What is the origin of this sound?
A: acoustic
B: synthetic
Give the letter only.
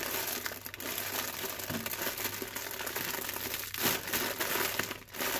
A